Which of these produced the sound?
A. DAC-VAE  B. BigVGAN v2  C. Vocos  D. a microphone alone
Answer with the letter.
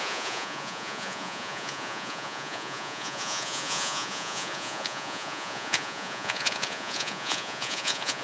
C